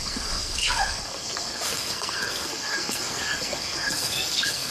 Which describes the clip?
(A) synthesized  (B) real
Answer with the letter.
A